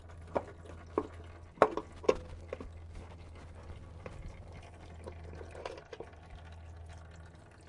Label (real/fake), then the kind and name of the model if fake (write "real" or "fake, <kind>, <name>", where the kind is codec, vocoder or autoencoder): real